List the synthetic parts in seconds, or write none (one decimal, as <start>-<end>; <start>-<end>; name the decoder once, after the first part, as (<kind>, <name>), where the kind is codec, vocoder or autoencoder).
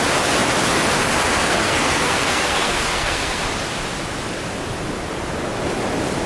1.3-3.4 (codec, SNAC)